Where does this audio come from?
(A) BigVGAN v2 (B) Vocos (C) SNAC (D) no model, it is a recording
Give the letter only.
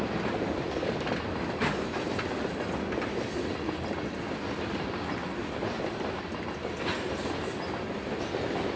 D